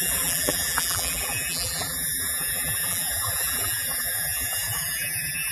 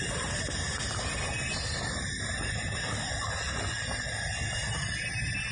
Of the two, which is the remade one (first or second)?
first